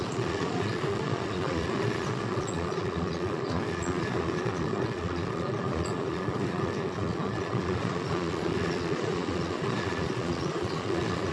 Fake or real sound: fake